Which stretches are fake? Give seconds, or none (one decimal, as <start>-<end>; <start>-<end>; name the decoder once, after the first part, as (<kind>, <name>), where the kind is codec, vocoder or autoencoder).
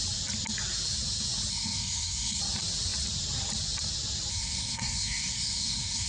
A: 1.5-2.4 (codec, SNAC); 4.3-6.1